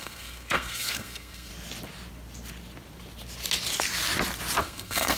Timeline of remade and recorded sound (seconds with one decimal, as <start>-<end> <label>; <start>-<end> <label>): 0.0-1.5 remade; 1.5-4.6 recorded; 4.6-5.2 remade